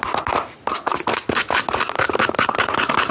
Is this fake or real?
real